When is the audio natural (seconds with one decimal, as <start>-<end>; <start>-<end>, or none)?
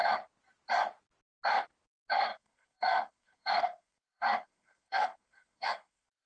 0.0-2.3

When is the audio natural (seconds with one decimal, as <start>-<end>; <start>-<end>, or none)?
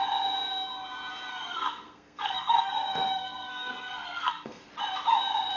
0.0-1.3; 4.7-5.6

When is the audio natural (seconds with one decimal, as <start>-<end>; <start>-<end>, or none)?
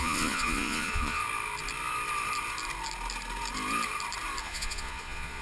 1.2-4.4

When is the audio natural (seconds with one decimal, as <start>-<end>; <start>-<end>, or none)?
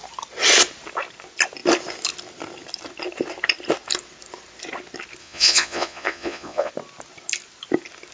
0.0-5.2; 6.7-8.1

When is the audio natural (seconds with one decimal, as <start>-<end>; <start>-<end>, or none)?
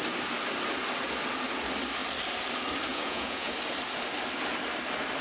0.0-2.9; 3.5-5.2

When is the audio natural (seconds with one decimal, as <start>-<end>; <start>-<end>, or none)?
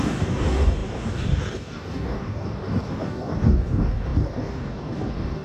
none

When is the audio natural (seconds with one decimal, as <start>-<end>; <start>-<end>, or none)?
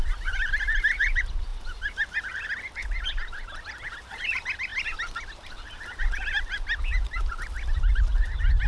0.0-8.7